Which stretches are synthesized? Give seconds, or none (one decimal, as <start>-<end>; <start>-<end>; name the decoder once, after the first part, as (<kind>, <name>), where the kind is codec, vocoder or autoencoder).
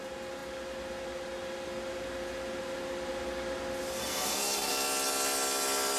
4.0-4.7 (codec, SNAC)